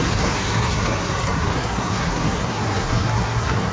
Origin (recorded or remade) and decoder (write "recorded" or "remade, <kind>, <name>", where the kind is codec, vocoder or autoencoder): remade, codec, SNAC